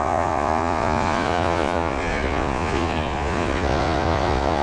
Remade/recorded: remade